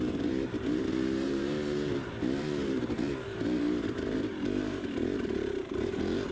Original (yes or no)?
no